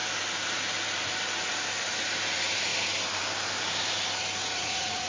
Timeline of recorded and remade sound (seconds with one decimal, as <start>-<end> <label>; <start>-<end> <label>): 0.0-4.4 recorded; 4.4-5.1 remade